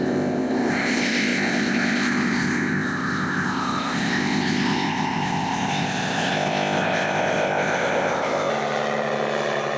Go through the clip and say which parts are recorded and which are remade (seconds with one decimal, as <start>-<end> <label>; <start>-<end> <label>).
0.0-8.5 remade; 8.5-9.8 recorded